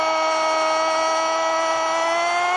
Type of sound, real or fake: real